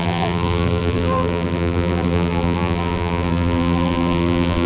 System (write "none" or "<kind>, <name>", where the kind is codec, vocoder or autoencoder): vocoder, BigVGAN v2